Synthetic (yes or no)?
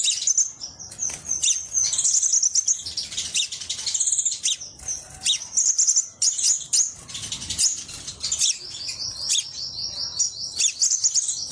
no